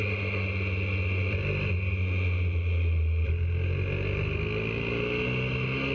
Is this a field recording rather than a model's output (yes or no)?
yes